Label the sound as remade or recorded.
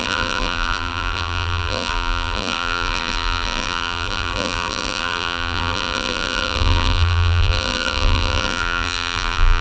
remade